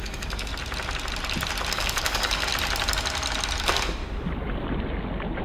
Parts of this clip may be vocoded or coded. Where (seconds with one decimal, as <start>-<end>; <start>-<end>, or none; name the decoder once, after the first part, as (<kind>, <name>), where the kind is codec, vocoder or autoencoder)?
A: 0.0-0.5 (codec, DAC); 1.7-2.5; 3.6-4.0